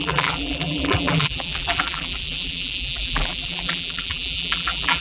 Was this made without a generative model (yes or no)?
no